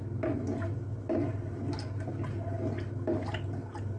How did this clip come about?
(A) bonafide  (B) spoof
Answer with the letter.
A